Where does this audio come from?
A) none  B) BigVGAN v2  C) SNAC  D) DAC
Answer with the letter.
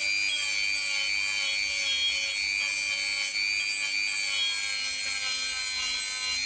A